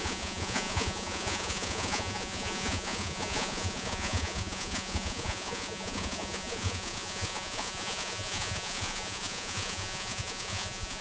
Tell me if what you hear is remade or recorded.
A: remade